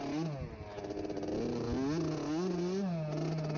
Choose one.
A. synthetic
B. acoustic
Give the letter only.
B